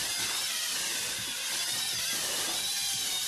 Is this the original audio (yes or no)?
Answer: yes